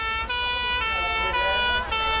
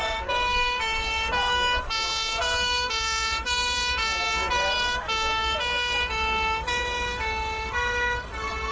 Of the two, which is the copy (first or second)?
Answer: second